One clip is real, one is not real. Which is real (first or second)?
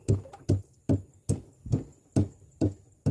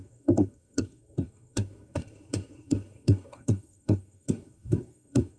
first